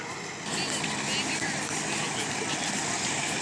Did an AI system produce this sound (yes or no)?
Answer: no